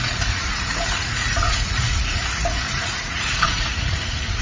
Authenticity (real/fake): fake